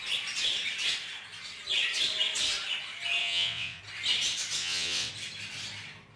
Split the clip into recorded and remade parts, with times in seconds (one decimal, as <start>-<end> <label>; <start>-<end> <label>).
0.0-3.2 recorded; 3.2-3.8 remade; 3.8-4.6 recorded; 4.6-5.1 remade; 5.1-6.2 recorded